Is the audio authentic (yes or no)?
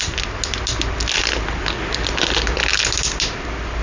yes